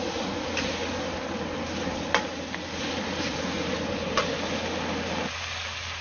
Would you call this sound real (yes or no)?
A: yes